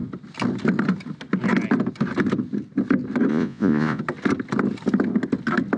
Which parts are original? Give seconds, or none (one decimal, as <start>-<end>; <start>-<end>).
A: 0.0-3.3; 4.0-5.8